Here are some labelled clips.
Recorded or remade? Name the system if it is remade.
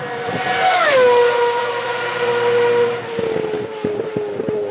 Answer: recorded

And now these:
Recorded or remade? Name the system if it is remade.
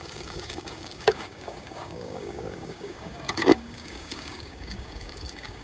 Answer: remade, codec, DAC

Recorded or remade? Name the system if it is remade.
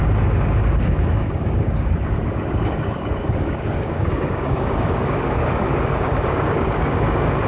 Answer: remade, codec, DAC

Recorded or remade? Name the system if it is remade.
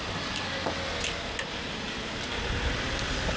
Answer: recorded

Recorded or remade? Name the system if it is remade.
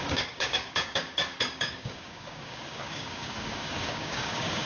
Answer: remade, codec, DAC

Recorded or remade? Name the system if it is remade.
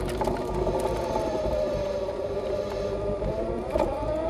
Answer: recorded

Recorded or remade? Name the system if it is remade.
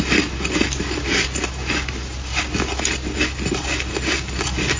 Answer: recorded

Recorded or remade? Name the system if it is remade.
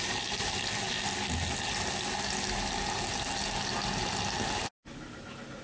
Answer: recorded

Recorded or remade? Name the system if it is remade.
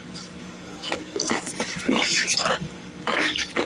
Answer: remade, codec, DAC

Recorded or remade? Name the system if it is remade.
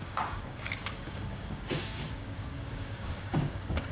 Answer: remade, codec, DAC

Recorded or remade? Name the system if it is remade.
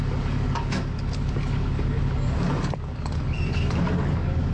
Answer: remade, codec, DAC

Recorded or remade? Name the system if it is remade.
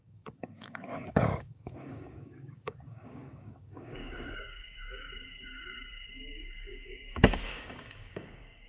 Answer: remade, codec, DAC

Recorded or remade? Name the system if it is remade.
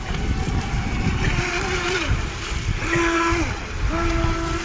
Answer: recorded